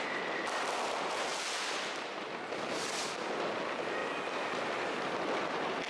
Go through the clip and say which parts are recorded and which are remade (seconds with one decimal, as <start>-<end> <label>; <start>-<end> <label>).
0.0-2.1 recorded; 2.1-3.0 remade; 3.0-5.9 recorded